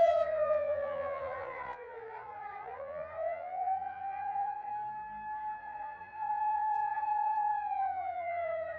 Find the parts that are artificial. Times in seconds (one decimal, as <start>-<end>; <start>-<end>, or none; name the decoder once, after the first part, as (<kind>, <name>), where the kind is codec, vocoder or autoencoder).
0.0-4.7 (vocoder, Vocos); 5.6-8.8